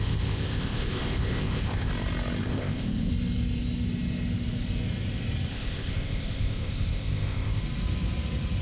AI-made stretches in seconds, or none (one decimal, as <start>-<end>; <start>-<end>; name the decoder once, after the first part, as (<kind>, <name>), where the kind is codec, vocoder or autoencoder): 0.0-1.9 (codec, ZipCodec); 2.4-3.1; 5.5-7.6